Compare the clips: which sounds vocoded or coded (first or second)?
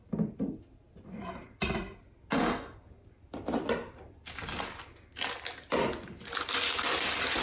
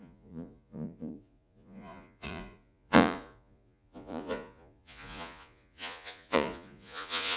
second